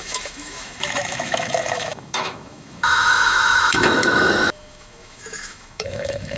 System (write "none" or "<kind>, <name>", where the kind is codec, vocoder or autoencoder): autoencoder, DAC-VAE